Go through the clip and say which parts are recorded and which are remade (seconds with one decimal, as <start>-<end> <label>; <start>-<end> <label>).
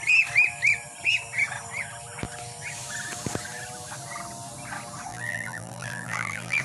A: 0.0-5.1 recorded; 5.1-6.6 remade